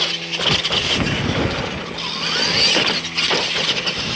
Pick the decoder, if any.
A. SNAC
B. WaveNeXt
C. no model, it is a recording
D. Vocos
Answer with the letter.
C